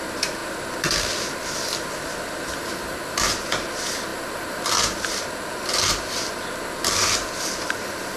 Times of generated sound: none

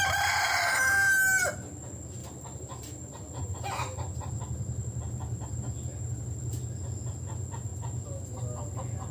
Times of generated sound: 2.2-4.3 (vocoder, BigVGAN v2)

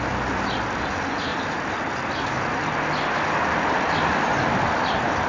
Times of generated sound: none

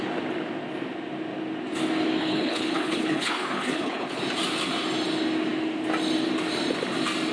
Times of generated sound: 2.2-4.2 (codec, HILCodec)

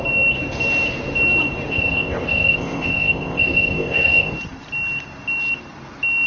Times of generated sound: 1.7-4.3 (codec, ZipCodec)

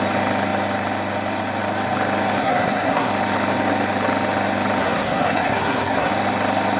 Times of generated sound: 2.4-3.1 (codec, SNAC); 4.8-6.1

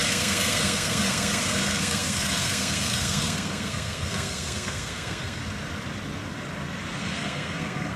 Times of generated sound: 0.0-5.4 (codec, SNAC); 7.0-8.0